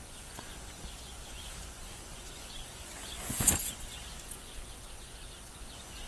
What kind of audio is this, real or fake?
fake